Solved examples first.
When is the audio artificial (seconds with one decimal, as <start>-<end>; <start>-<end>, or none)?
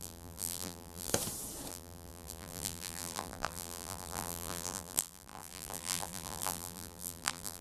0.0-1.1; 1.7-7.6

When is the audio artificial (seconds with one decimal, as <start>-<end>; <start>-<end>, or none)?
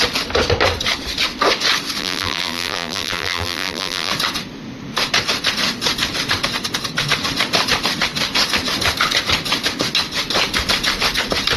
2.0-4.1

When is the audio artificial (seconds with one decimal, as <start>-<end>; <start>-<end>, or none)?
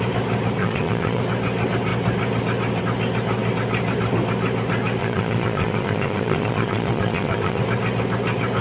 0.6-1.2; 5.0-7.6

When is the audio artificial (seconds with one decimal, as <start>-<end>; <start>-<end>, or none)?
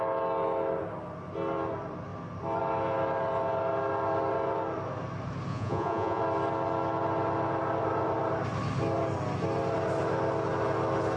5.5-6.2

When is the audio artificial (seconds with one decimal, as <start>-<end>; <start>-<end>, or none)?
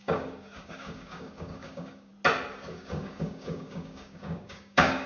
0.0-2.1; 2.7-5.1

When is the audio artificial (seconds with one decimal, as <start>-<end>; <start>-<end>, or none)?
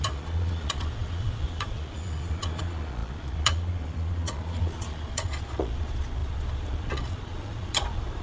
0.0-8.2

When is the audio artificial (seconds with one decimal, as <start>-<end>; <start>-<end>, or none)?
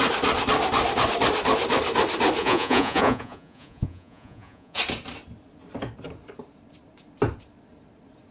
2.4-4.8